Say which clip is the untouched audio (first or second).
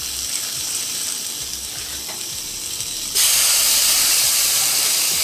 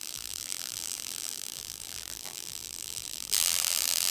first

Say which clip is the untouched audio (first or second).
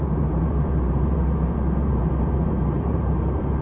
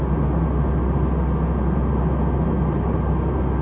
second